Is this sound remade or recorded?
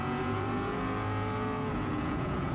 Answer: remade